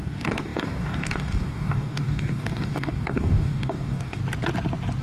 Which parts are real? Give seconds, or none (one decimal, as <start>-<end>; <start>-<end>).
4.2-5.0